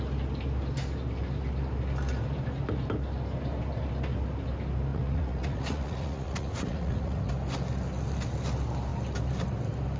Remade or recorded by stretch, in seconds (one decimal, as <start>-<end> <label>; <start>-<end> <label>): 0.0-4.9 recorded; 4.9-7.3 remade; 7.3-10.0 recorded